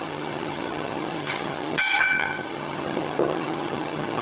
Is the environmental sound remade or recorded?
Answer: remade